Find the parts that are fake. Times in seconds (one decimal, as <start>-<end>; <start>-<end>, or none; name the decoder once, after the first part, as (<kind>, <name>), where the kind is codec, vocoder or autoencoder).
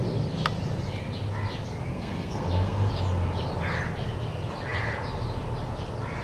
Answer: 1.9-2.9 (codec, SNAC)